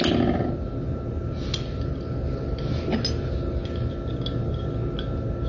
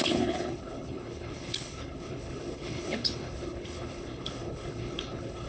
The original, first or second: first